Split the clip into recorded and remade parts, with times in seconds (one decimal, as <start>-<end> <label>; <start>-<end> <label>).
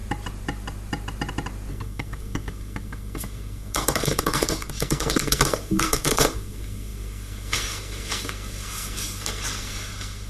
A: 0.0-1.7 recorded; 1.7-10.3 remade